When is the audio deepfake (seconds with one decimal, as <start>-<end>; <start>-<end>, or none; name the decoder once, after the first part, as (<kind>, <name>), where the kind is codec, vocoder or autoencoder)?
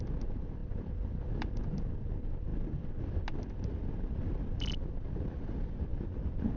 0.0-2.5 (vocoder, BigVGAN v2); 4.4-6.6